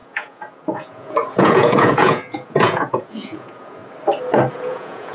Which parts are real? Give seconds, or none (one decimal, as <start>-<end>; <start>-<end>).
3.8-4.5